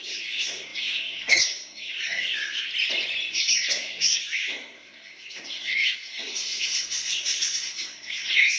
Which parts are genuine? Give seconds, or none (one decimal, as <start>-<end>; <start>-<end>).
2.7-3.3